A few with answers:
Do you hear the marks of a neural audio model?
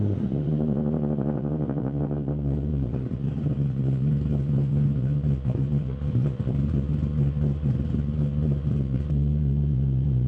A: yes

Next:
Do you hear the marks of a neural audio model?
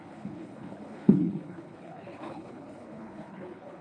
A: yes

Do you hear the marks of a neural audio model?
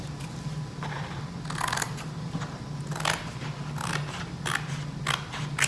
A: no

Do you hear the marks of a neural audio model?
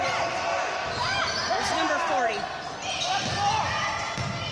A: no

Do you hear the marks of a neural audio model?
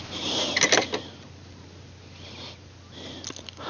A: no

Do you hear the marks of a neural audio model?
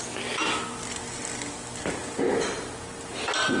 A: no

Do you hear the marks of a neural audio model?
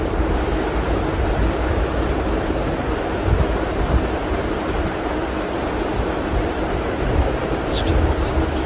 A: yes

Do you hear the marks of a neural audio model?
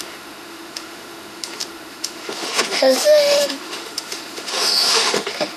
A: yes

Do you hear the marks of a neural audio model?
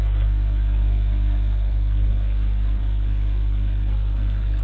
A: yes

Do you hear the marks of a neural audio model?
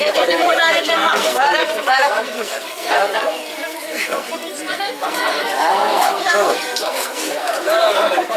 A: yes